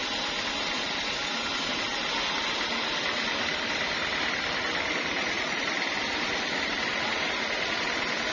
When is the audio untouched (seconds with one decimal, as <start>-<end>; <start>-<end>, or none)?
0.0-5.1; 5.7-8.3

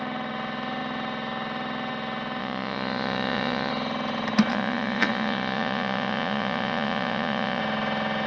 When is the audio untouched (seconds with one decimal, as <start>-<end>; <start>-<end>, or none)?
0.0-2.4; 3.7-4.5; 7.6-8.3

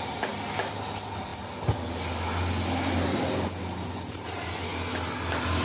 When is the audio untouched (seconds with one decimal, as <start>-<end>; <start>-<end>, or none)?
0.0-5.6

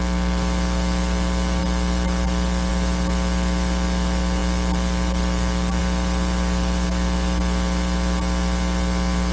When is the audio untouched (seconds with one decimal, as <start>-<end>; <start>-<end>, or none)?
0.0-9.3